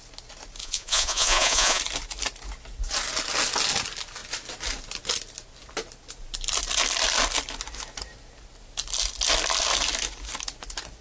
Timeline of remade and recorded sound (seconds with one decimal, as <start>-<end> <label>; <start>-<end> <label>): 0.0-0.6 recorded; 0.6-1.8 remade; 1.8-11.0 recorded